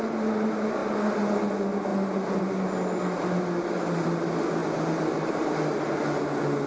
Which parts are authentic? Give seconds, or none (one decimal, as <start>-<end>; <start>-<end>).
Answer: 0.0-4.6; 6.2-6.7